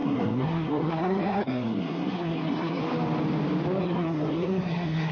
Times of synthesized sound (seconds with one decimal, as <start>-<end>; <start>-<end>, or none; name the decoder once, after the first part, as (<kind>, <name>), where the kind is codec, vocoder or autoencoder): 0.0-2.8 (codec, SNAC); 3.8-5.1

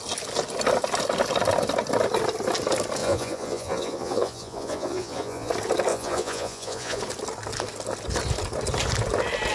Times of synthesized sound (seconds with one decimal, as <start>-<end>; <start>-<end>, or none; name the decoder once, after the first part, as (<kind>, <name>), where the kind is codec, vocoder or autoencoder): 3.0-5.5 (vocoder, Vocos); 5.9-7.0